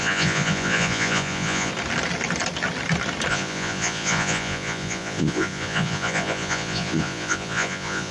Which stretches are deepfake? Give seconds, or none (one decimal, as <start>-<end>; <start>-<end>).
0.0-1.7; 3.3-8.1